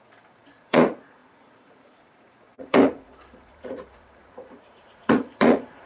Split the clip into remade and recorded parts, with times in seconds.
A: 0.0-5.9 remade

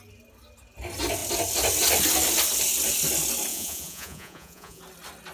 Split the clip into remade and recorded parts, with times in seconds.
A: 0.0-3.5 recorded; 3.5-4.8 remade; 4.8-5.3 recorded